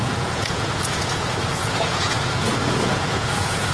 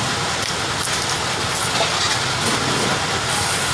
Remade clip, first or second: first